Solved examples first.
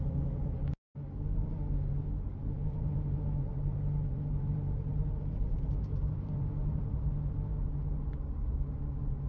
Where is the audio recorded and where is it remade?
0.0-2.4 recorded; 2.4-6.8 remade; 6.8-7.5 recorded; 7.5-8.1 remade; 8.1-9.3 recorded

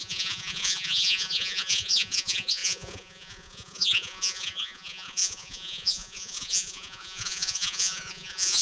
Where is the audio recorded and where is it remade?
0.0-8.6 remade

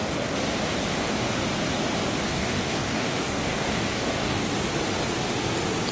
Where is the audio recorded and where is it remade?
0.0-2.3 recorded; 2.3-4.5 remade; 4.5-5.9 recorded